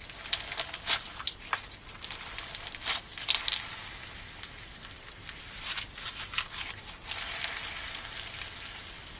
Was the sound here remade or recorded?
recorded